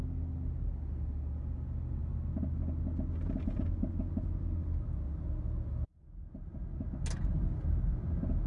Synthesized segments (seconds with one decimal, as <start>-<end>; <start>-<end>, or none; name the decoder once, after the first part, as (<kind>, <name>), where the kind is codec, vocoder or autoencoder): none